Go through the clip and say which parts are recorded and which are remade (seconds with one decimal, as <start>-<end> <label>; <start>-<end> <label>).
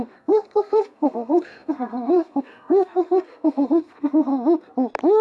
0.0-4.3 remade; 4.3-5.2 recorded